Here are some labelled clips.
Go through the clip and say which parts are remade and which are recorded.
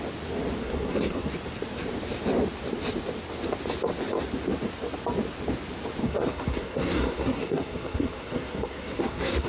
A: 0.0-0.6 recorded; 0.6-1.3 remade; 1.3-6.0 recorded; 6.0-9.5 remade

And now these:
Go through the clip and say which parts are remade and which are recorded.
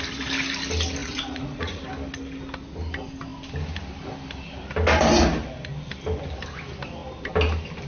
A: 0.0-1.0 recorded; 1.0-1.8 remade; 1.8-7.9 recorded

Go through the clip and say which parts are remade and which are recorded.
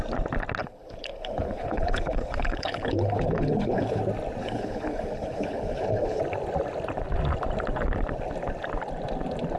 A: 0.0-0.6 recorded; 0.6-4.0 remade; 4.0-4.4 recorded; 4.4-6.2 remade; 6.2-9.6 recorded